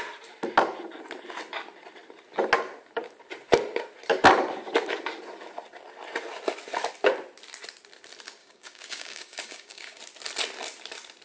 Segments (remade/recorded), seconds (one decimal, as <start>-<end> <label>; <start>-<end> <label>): 0.0-8.4 recorded; 8.4-10.0 remade; 10.0-11.2 recorded